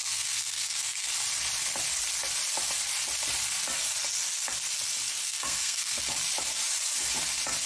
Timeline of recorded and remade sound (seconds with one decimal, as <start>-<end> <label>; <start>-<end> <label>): 0.0-1.1 remade; 1.1-5.2 recorded; 5.2-6.0 remade; 6.0-7.7 recorded